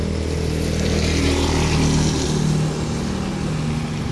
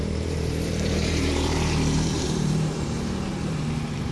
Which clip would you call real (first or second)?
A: first